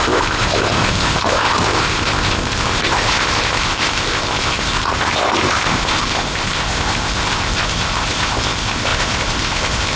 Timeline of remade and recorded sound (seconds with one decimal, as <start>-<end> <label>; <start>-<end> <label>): 0.0-10.0 remade

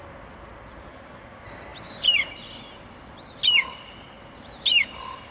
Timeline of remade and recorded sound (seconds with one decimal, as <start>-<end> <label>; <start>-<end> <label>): 0.0-5.3 recorded